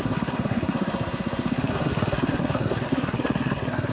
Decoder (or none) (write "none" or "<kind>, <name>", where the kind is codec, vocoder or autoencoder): codec, SNAC